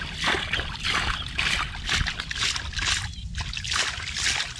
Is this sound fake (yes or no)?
no